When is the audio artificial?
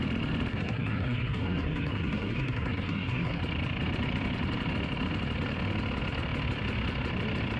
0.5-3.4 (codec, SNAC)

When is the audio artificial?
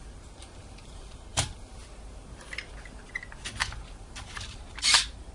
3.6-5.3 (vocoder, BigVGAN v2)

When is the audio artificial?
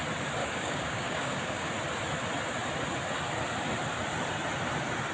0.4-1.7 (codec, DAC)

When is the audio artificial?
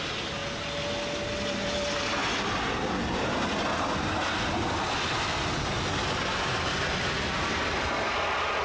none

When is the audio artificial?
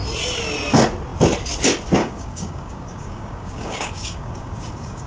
2.0-5.1 (codec, DAC)